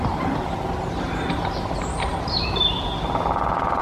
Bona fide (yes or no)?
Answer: yes